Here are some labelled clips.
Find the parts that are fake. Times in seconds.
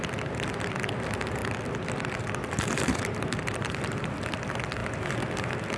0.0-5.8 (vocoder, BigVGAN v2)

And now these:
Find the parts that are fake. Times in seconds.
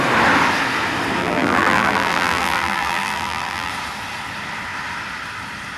1.2-3.7 (vocoder, BigVGAN v2)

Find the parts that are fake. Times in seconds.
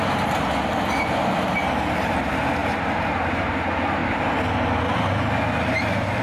1.6-2.2 (vocoder, BigVGAN v2); 2.6-3.5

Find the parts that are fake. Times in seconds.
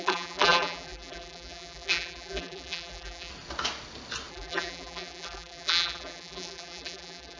0.0-3.3 (vocoder, BigVGAN v2); 4.3-7.4